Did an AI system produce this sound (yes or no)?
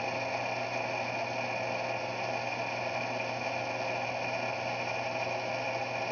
no